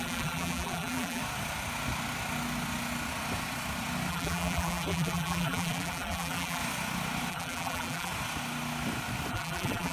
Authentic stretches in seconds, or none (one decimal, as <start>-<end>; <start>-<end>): 1.2-4.1; 6.6-7.3; 8.1-9.3